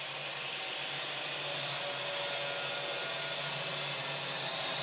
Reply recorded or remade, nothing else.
recorded